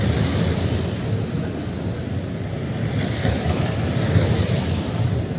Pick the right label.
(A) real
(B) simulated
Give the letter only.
A